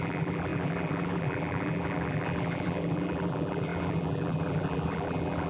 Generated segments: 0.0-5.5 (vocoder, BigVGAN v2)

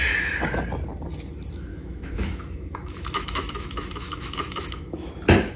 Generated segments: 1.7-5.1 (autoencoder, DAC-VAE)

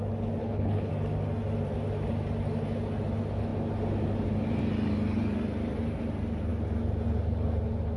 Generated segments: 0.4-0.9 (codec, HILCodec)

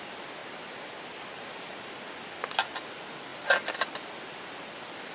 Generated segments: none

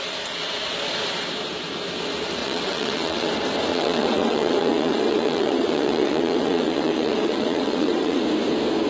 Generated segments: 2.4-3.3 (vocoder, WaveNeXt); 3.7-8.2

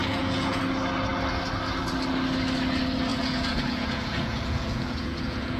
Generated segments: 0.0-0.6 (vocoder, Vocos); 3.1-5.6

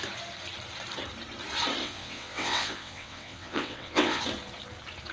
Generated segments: 1.8-4.2 (vocoder, WaveNeXt)

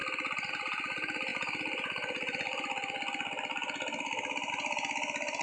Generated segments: none